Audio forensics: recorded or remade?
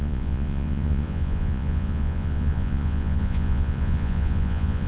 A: remade